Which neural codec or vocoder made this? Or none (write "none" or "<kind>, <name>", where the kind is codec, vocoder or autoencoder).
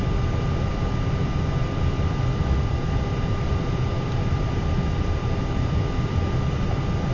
none